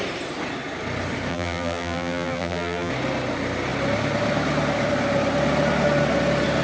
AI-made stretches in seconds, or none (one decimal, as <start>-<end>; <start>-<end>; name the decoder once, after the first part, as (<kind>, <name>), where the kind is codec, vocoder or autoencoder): 1.3-2.9 (vocoder, BigVGAN v2)

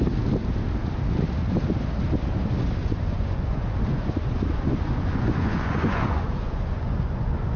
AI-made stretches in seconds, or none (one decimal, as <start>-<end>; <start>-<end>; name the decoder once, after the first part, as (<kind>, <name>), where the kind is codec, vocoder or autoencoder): 2.8-7.6 (vocoder, Vocos)

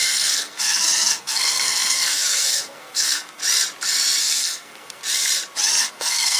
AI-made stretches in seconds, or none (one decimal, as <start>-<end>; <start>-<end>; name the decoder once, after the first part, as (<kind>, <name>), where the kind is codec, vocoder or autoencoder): 0.0-3.4 (codec, SNAC); 4.2-5.0; 5.8-6.4